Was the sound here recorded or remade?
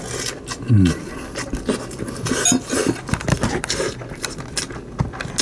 recorded